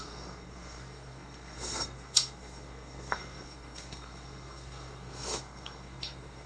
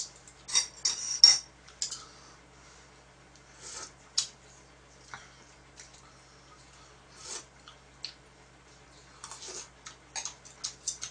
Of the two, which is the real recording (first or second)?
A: second